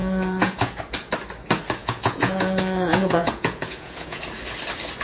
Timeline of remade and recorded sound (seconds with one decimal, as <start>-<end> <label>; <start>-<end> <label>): 0.0-0.8 remade; 0.8-1.8 recorded; 1.8-4.2 remade; 4.2-5.0 recorded